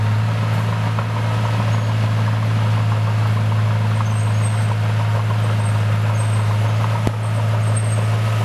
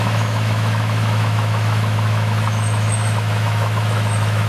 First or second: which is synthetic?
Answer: second